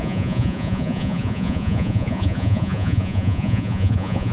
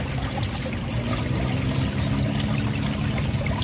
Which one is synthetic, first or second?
first